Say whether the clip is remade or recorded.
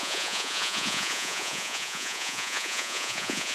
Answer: remade